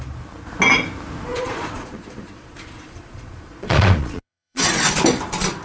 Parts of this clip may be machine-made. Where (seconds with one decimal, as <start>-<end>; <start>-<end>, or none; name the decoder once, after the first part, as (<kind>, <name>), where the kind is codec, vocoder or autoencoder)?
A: 1.3-4.7 (vocoder, Vocos)